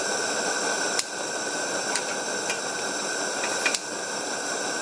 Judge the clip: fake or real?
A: real